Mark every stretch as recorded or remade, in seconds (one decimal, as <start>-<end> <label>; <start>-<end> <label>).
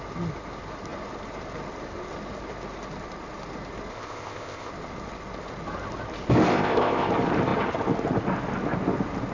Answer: 0.0-3.9 recorded; 3.9-4.7 remade; 4.7-6.5 recorded; 6.5-7.1 remade; 7.1-9.3 recorded